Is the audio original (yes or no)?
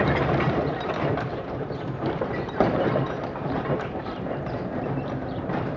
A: no